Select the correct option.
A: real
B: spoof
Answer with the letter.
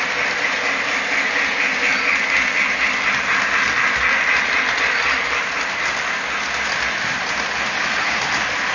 A